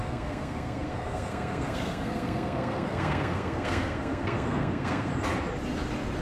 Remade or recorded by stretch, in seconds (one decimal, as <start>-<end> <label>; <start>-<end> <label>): 0.0-5.1 remade; 5.1-6.2 recorded